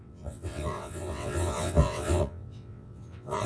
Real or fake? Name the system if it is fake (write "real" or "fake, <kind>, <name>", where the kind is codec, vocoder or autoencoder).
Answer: fake, vocoder, WaveNeXt